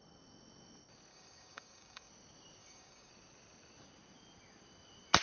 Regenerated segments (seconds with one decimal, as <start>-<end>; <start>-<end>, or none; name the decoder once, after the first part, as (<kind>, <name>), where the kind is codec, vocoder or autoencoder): 1.1-2.1 (codec, DAC); 2.6-3.1